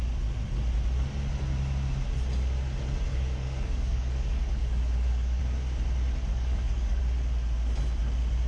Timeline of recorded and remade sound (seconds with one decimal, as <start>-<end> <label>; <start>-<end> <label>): 0.0-3.1 recorded; 3.1-5.4 remade; 5.4-6.3 recorded; 6.3-7.0 remade; 7.0-8.5 recorded